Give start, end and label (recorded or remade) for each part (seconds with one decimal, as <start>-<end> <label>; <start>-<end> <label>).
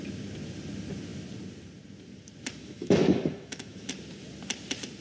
0.0-2.6 recorded; 2.6-3.9 remade; 3.9-5.0 recorded